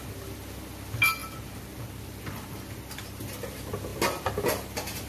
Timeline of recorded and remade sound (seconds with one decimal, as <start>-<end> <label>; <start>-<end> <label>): 0.0-3.9 recorded; 3.9-5.1 remade